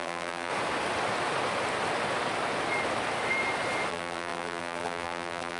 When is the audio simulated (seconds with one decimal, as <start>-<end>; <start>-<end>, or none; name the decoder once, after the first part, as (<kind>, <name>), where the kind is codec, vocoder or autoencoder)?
0.0-0.5 (vocoder, BigVGAN v2); 3.9-5.6